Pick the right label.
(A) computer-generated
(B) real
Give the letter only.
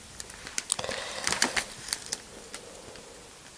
B